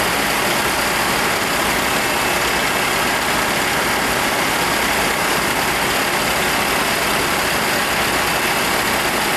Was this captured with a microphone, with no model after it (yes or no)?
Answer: yes